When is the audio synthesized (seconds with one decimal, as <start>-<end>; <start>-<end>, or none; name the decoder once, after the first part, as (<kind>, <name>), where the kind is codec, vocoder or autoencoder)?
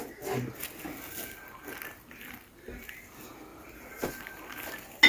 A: 3.5-4.1 (vocoder, BigVGAN v2)